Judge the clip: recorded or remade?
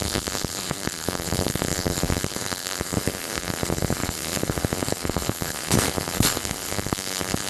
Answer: remade